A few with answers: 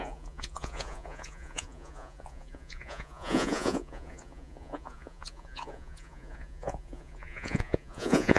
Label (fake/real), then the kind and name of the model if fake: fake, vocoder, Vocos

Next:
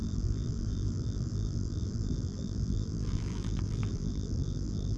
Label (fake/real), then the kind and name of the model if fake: fake, vocoder, BigVGAN v2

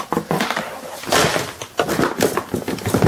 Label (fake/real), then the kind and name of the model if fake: real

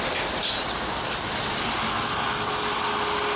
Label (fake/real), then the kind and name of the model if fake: real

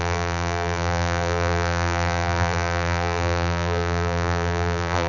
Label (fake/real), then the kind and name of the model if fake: fake, vocoder, BigVGAN v2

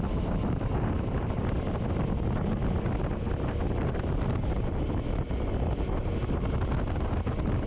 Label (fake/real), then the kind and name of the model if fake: real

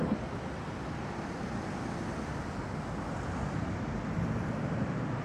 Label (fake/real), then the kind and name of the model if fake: real